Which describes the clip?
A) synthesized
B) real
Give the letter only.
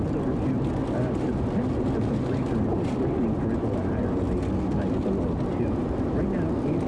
B